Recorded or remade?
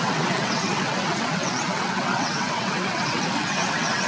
remade